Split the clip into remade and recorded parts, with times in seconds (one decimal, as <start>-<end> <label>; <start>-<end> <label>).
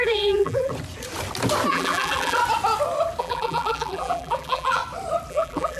0.0-0.7 remade; 0.7-1.7 recorded; 1.7-2.4 remade; 2.4-3.2 recorded; 3.2-4.8 remade; 4.8-5.3 recorded; 5.3-5.8 remade